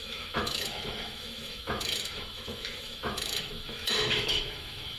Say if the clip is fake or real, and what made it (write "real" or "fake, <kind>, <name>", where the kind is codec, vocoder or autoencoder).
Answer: fake, autoencoder, DAC-VAE